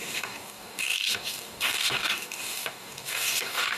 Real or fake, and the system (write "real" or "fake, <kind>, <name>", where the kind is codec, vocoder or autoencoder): fake, codec, DAC